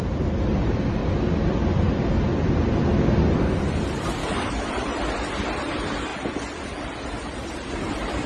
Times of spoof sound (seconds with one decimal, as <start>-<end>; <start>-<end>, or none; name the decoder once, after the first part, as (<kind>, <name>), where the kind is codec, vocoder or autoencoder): 4.2-4.7 (autoencoder, DAC-VAE)